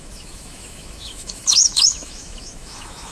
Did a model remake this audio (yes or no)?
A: yes